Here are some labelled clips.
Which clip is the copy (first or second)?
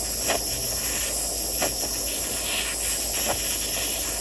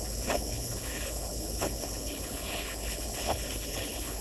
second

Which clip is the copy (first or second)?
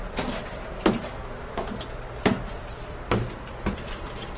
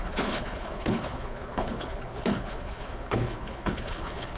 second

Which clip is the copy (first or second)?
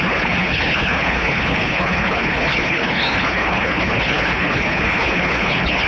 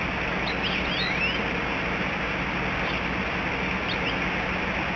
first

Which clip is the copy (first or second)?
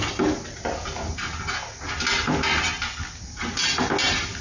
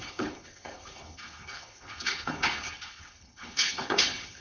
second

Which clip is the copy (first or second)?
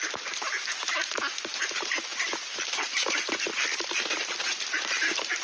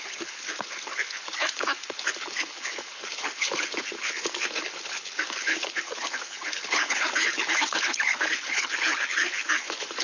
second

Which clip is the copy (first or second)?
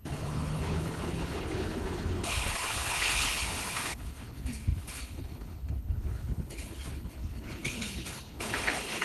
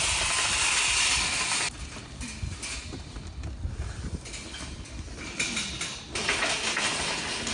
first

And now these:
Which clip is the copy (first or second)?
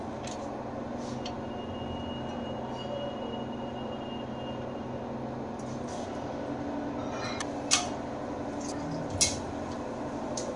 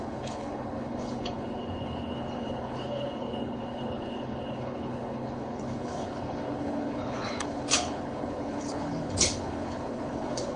second